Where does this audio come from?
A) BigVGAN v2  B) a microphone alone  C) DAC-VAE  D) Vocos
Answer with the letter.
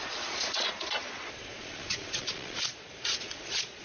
D